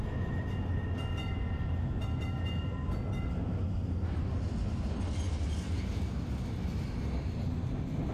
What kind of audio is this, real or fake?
real